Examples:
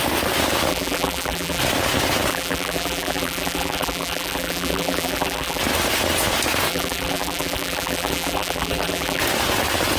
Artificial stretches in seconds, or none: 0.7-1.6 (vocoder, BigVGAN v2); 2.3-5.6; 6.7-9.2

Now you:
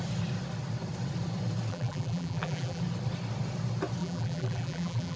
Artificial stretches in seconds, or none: 1.7-2.8 (vocoder, BigVGAN v2); 4.0-5.2

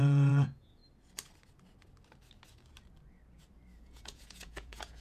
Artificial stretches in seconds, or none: 0.0-0.8 (vocoder, Vocos); 3.8-5.0

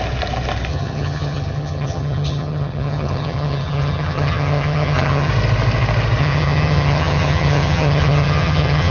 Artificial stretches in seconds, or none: 0.7-5.3 (vocoder, HiFi-GAN); 6.2-8.9

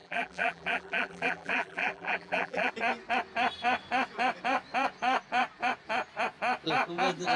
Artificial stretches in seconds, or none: 0.0-2.7 (vocoder, BigVGAN v2)

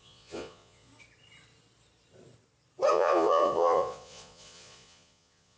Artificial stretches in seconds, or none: 0.0-0.9 (vocoder, Vocos); 2.9-5.6